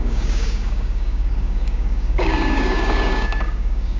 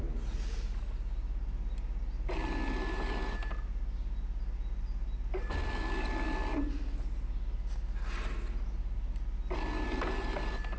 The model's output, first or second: first